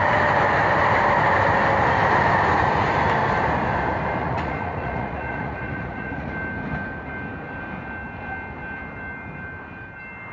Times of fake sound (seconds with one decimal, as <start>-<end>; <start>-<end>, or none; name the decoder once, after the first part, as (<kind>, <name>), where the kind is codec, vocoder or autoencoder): 4.2-6.3 (vocoder, Vocos)